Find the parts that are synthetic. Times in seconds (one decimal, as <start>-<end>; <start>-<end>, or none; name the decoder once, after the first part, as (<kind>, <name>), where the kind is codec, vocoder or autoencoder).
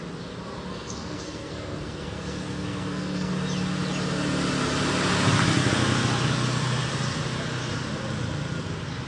0.7-3.3 (codec, SNAC)